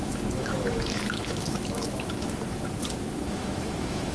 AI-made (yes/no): yes